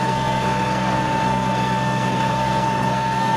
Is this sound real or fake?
fake